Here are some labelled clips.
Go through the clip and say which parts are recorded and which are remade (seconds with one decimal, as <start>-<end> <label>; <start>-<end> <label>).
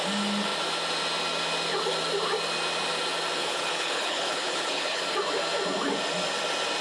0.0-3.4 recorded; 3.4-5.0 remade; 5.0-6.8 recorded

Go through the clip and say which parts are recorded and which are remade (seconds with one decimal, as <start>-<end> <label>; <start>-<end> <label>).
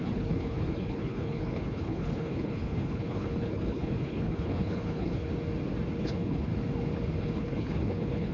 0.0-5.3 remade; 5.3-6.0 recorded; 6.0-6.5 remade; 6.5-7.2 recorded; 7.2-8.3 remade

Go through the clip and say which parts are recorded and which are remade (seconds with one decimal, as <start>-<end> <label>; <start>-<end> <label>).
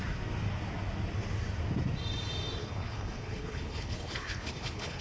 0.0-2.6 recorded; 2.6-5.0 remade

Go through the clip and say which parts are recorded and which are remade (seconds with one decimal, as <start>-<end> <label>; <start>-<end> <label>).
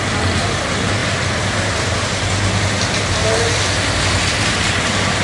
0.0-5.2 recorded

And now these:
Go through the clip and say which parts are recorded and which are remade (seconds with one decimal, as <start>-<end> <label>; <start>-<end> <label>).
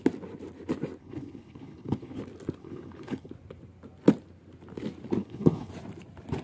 0.0-1.0 recorded; 1.0-2.2 remade; 2.2-2.6 recorded; 2.6-3.3 remade; 3.3-5.2 recorded; 5.2-5.7 remade; 5.7-6.4 recorded